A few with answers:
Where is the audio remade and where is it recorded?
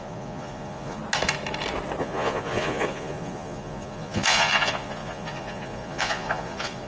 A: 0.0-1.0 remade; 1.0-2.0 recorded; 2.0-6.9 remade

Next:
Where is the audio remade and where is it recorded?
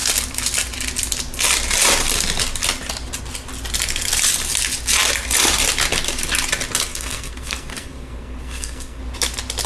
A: 0.0-6.9 recorded; 6.9-9.0 remade; 9.0-9.7 recorded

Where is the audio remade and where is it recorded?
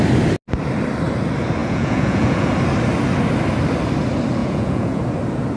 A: 0.0-1.6 recorded; 1.6-2.5 remade; 2.5-4.4 recorded; 4.4-5.0 remade; 5.0-5.6 recorded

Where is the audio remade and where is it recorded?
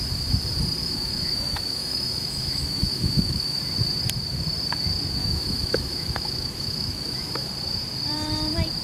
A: 0.0-0.8 recorded; 0.8-3.6 remade; 3.6-5.2 recorded; 5.2-7.5 remade; 7.5-8.8 recorded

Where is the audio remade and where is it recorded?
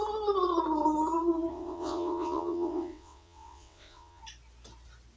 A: 0.0-1.5 recorded; 1.5-4.2 remade; 4.2-5.2 recorded